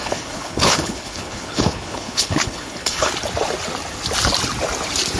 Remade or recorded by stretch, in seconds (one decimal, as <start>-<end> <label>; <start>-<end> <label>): 0.0-3.1 remade; 3.1-5.2 recorded